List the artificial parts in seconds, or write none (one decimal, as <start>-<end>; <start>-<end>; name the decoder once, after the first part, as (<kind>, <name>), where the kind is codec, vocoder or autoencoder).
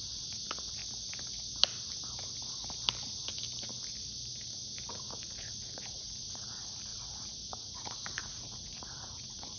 0.0-0.8 (vocoder, Vocos); 4.9-9.6